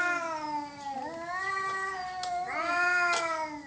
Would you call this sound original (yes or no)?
yes